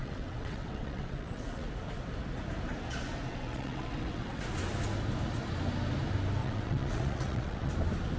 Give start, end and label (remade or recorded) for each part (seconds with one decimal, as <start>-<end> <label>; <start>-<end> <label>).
0.0-1.6 remade; 1.6-3.3 recorded; 3.3-4.4 remade; 4.4-6.4 recorded; 6.4-7.7 remade; 7.7-8.2 recorded